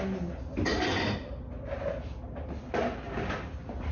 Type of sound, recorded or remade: recorded